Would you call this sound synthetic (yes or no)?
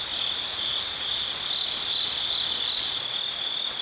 no